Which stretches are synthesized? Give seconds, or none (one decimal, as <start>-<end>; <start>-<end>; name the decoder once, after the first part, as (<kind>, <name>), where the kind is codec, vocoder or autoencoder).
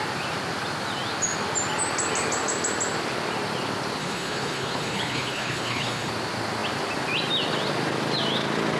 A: 4.0-6.1 (codec, HILCodec)